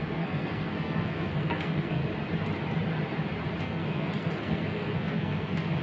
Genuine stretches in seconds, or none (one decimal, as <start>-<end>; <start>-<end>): 2.0-3.6